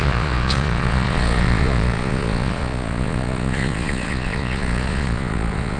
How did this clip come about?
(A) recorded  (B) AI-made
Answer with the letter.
B